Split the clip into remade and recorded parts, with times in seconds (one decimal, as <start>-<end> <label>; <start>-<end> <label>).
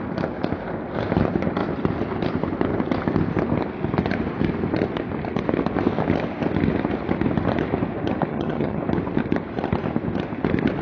0.0-8.3 recorded; 8.3-8.8 remade; 8.8-10.8 recorded